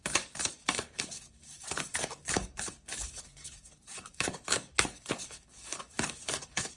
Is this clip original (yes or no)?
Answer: no